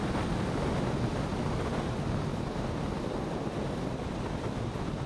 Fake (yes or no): no